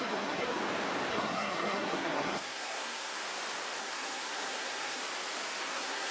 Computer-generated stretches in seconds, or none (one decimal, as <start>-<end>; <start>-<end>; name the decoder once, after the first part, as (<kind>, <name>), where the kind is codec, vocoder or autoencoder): 0.0-0.6 (codec, SNAC); 1.1-3.2; 3.8-5.0; 5.6-6.1